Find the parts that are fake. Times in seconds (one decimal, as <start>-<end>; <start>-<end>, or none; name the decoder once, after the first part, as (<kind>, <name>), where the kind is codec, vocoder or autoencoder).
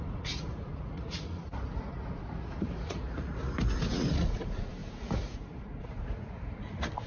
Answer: 0.0-3.4 (vocoder, Vocos); 4.1-7.1